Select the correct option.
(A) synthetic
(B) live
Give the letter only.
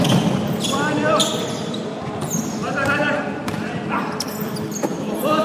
A